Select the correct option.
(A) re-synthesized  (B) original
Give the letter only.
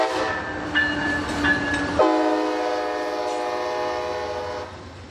B